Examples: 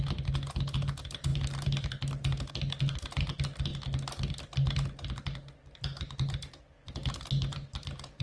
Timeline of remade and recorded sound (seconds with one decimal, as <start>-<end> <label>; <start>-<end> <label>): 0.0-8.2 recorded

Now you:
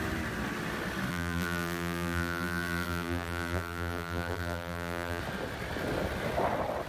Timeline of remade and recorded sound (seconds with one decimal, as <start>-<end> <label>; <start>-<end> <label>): 0.0-1.1 recorded; 1.1-5.2 remade; 5.2-6.9 recorded

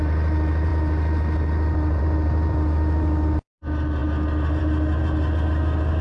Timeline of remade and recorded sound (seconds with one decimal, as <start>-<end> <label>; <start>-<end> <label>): 0.0-6.0 recorded